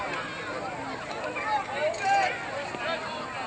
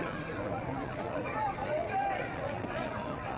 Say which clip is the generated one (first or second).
second